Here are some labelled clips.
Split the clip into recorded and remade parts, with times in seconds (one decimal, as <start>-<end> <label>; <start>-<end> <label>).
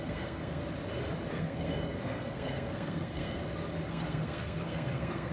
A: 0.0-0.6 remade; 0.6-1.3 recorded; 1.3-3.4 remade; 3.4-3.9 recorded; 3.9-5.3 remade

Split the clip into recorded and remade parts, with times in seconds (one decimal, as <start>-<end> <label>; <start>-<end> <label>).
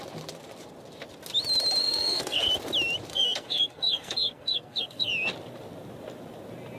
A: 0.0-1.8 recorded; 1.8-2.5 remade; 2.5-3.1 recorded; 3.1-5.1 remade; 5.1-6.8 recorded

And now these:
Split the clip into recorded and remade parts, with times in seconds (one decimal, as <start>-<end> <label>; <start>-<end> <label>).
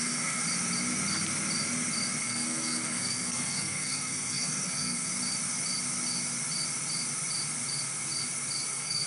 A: 0.0-0.4 remade; 0.4-2.2 recorded; 2.2-5.1 remade; 5.1-8.7 recorded; 8.7-9.1 remade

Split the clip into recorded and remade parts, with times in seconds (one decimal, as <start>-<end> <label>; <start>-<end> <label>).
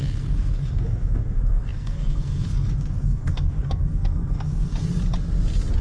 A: 0.0-4.8 remade; 4.8-5.8 recorded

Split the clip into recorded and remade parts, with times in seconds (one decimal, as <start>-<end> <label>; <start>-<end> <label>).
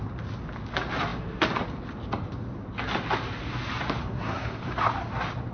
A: 0.0-4.0 recorded; 4.0-4.6 remade; 4.6-5.5 recorded